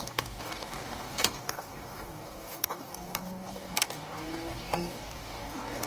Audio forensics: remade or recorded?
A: remade